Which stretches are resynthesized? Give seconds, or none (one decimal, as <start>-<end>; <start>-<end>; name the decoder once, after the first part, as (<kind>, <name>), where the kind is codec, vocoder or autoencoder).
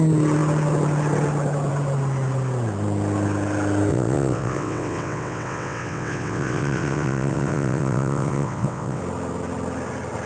3.9-9.0 (vocoder, WaveNeXt)